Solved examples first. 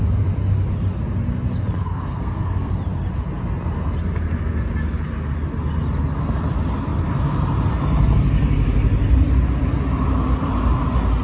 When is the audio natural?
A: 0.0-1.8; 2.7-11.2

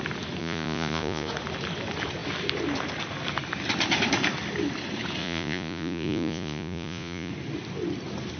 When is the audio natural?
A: 0.0-0.4; 1.3-5.2; 7.3-8.4

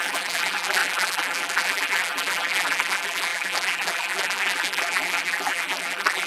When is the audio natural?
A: none

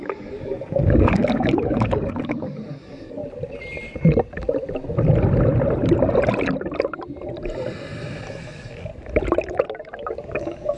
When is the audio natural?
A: 3.2-8.3; 8.9-10.1

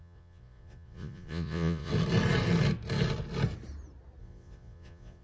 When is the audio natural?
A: 1.9-4.2

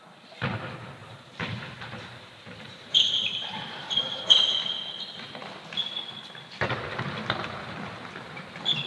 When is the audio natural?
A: 0.0-1.0; 4.3-8.9

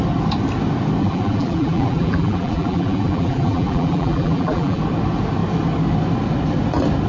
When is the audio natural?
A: 0.0-1.0; 4.8-7.1

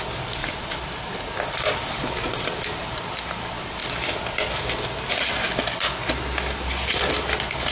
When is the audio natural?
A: 0.0-7.7